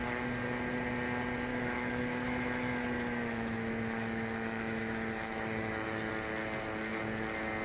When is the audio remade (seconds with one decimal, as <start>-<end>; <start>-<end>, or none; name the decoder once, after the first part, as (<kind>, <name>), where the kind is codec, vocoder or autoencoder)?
1.5-6.1 (autoencoder, DAC-VAE)